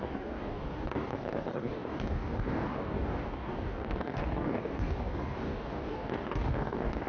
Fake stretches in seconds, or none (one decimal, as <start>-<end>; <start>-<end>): 0.0-7.1